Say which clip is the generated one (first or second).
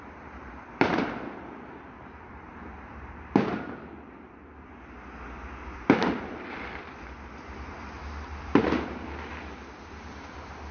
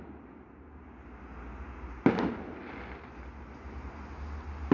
first